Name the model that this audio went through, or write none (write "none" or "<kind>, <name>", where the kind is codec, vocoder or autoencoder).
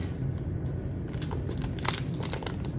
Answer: none